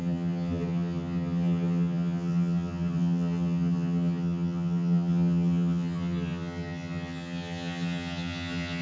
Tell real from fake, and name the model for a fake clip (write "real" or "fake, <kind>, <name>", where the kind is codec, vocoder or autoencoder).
fake, vocoder, HiFi-GAN